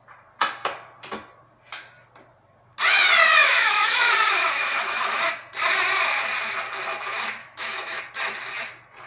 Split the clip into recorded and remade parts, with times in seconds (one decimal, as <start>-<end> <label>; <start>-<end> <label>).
0.0-3.4 recorded; 3.4-5.3 remade; 5.3-7.4 recorded; 7.4-8.0 remade; 8.0-9.1 recorded